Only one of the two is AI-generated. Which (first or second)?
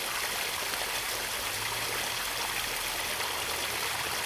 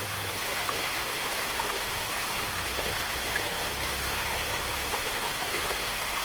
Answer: second